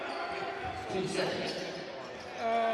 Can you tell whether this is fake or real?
real